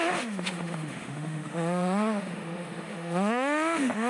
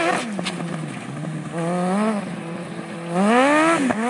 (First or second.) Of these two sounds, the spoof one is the first